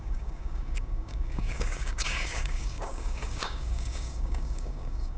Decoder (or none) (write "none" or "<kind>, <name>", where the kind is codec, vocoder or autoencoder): codec, DAC